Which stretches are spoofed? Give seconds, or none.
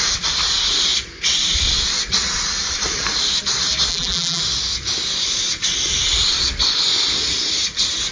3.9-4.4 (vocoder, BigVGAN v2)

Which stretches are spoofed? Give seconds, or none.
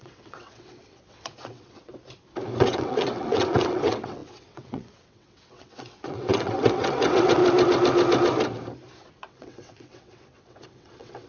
0.0-1.9 (vocoder, WaveNeXt); 2.6-7.4; 9.1-11.3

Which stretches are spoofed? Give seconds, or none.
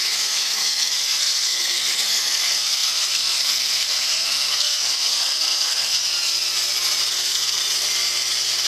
0.0-6.0 (codec, SNAC); 7.1-7.6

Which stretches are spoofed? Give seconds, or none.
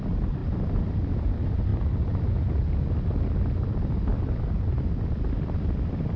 none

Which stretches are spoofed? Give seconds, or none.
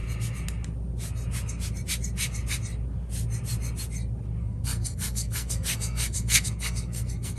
4.4-7.4 (codec, SNAC)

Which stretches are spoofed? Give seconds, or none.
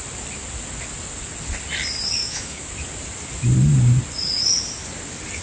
2.2-2.7 (autoencoder, DAC-VAE)